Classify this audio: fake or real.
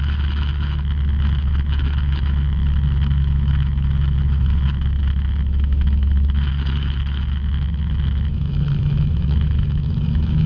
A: fake